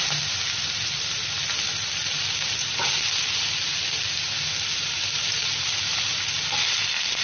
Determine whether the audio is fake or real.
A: real